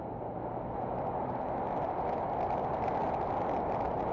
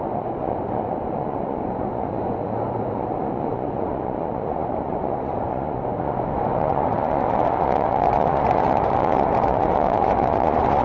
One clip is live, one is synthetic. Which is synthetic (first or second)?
second